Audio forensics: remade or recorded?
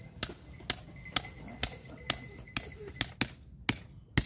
recorded